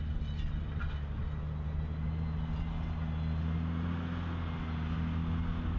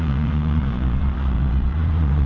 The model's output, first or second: second